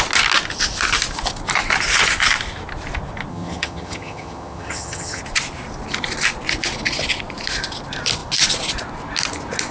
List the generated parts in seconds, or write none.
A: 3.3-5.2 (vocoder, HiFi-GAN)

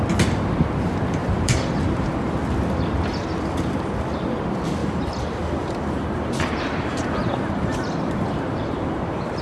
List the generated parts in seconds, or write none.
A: 1.2-2.3 (vocoder, BigVGAN v2); 4.8-9.4

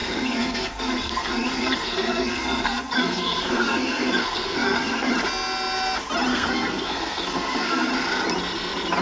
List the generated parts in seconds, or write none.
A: 0.0-5.1 (codec, SNAC); 6.3-7.9